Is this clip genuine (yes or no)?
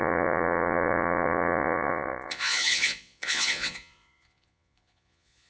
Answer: no